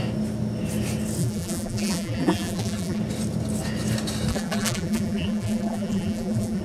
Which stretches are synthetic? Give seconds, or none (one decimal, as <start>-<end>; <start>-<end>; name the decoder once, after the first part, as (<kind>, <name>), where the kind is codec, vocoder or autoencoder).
1.2-3.0 (vocoder, BigVGAN v2); 4.3-6.6